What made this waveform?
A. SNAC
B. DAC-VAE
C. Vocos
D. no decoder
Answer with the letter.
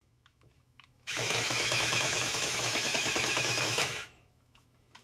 B